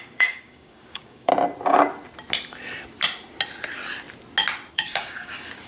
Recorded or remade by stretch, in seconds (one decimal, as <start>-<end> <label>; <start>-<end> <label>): 0.0-1.3 remade; 1.3-4.7 recorded; 4.7-5.7 remade